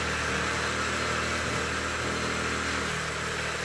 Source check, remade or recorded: recorded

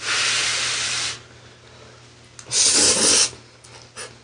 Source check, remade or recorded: recorded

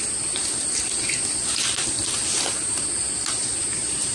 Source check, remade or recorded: recorded